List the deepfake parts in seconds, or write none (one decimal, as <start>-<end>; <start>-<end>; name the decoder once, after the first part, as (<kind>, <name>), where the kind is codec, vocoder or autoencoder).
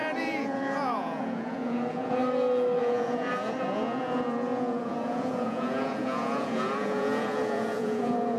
0.0-2.2 (vocoder, Vocos); 2.8-8.4